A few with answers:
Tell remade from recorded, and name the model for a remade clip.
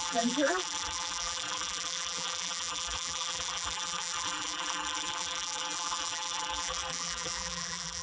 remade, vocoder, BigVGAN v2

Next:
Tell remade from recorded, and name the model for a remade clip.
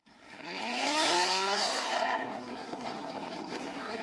remade, codec, SNAC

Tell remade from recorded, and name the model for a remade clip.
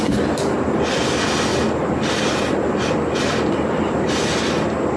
recorded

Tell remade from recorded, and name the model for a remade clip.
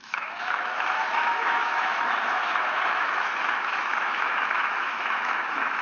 remade, autoencoder, DAC-VAE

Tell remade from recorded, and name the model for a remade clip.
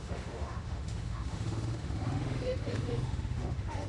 remade, autoencoder, DAC-VAE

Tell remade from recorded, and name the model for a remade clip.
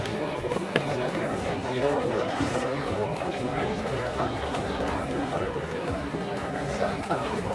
remade, codec, SNAC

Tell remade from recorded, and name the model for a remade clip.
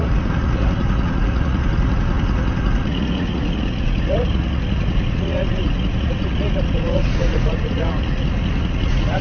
remade, vocoder, Vocos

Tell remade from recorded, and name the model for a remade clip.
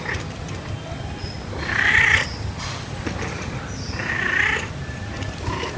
recorded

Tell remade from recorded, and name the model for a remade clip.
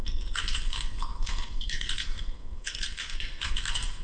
remade, codec, SNAC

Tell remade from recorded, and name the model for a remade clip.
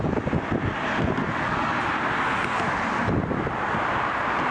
recorded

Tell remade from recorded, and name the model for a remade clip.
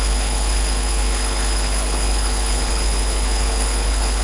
remade, codec, HILCodec